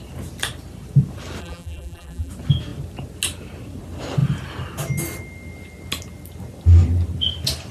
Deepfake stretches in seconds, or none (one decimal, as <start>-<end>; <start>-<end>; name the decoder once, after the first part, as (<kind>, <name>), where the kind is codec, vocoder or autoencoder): 1.4-2.3 (vocoder, BigVGAN v2)